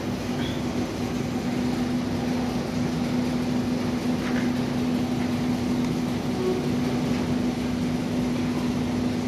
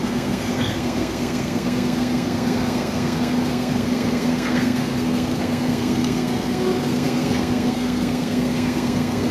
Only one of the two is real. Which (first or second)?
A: first